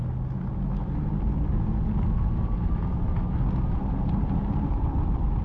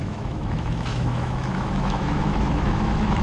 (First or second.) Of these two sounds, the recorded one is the first